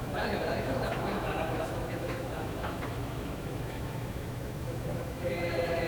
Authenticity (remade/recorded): remade